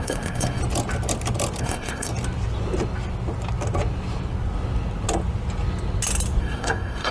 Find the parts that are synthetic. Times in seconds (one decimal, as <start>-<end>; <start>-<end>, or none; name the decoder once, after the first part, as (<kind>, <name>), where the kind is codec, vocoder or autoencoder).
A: 0.0-0.6 (codec, SNAC); 1.6-2.1; 6.4-7.1